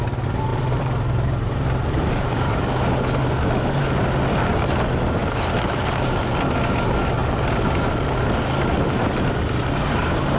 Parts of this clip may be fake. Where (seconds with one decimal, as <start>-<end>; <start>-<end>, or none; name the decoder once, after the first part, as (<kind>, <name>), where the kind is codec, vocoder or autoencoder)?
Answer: 0.5-2.6 (vocoder, BigVGAN v2); 5.2-6.2